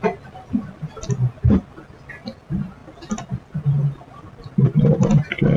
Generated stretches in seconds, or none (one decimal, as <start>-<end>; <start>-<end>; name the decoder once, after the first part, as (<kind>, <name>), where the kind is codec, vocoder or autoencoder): none